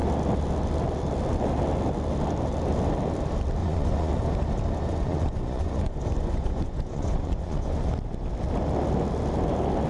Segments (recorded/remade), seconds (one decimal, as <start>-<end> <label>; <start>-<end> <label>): 0.0-3.6 recorded; 3.6-4.1 remade; 4.1-4.9 recorded; 4.9-7.9 remade; 7.9-9.9 recorded